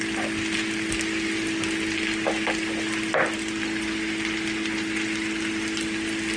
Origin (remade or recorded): recorded